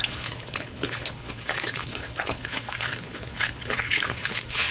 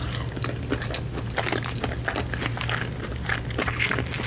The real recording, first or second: second